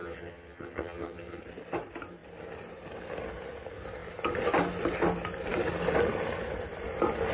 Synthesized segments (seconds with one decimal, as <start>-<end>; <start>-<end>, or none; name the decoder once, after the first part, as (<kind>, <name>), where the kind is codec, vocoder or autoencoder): 0.0-1.4 (vocoder, HiFi-GAN)